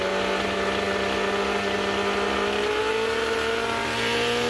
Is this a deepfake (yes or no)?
no